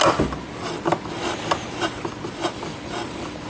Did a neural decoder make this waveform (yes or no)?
no